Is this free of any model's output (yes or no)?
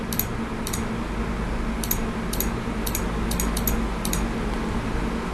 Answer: yes